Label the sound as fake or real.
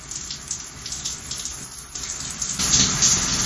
real